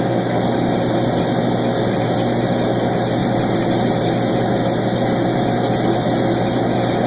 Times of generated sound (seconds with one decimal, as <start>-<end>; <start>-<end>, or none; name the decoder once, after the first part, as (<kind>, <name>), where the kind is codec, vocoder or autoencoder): none